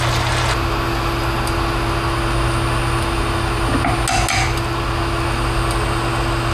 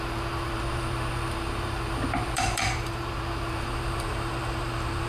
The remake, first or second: second